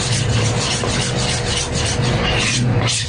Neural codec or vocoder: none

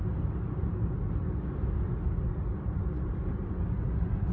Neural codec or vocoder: none